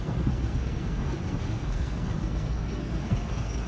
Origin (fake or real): fake